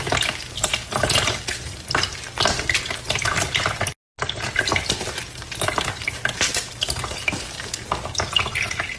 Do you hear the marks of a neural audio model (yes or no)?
no